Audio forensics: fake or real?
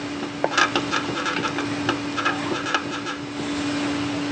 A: real